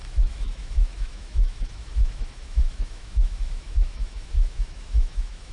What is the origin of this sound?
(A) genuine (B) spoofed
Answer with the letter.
B